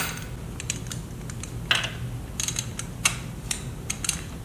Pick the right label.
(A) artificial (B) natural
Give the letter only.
B